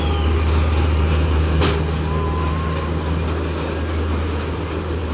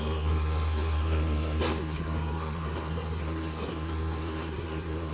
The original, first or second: first